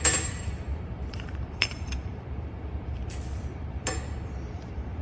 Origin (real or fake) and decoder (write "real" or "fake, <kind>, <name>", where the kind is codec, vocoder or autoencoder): fake, vocoder, BigVGAN v2